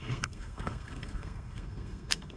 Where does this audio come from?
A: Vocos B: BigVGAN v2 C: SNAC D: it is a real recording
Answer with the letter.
C